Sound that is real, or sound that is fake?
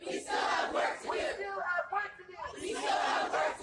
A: real